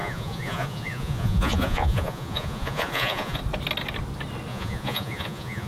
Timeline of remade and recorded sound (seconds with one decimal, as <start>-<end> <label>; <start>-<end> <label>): 0.0-3.4 remade; 3.4-4.5 recorded; 4.5-5.7 remade